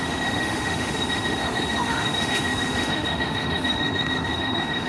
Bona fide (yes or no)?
no